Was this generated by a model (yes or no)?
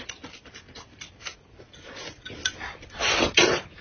no